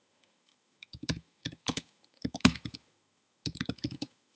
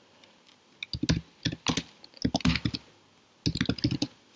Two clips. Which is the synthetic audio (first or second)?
first